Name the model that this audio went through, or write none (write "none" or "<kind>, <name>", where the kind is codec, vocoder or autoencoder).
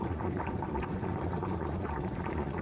vocoder, Vocos